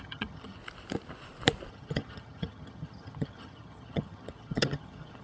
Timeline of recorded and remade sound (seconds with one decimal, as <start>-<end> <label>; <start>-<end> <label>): 0.0-0.6 remade; 0.6-1.7 recorded; 1.7-5.2 remade